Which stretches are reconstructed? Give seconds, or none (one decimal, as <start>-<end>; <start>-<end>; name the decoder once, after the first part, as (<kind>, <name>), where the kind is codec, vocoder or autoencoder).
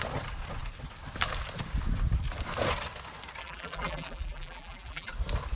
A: 3.4-5.1 (vocoder, BigVGAN v2)